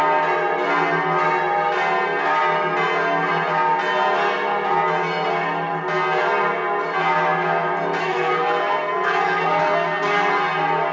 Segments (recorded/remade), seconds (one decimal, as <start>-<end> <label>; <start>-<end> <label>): 0.0-8.0 recorded; 8.0-10.3 remade; 10.3-10.9 recorded